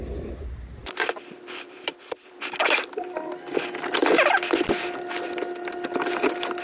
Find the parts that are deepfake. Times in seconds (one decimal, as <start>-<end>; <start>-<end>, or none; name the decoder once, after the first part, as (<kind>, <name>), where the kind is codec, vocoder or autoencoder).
0.8-2.4 (vocoder, BigVGAN v2)